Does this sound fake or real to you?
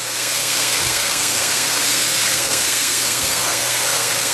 fake